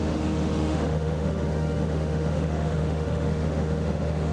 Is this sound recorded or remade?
remade